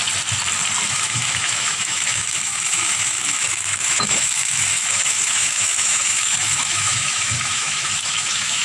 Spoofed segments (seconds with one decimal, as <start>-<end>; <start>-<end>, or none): 0.9-8.6